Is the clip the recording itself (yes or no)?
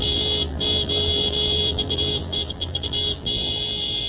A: no